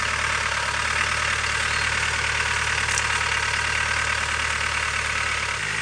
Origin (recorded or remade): recorded